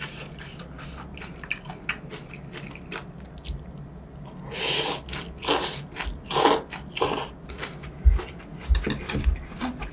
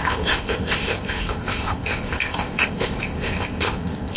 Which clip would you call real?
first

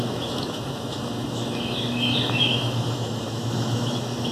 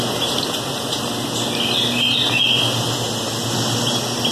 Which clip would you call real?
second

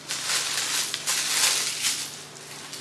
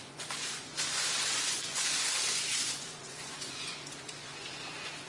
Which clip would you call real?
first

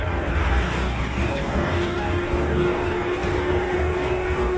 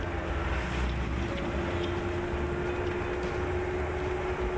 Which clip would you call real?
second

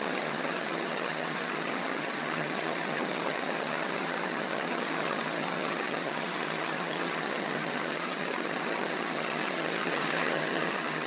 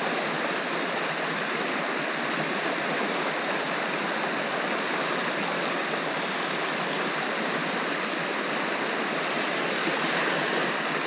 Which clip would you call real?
second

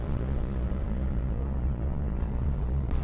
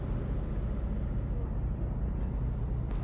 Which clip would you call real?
second